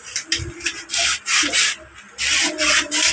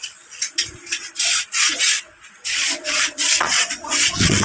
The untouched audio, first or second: first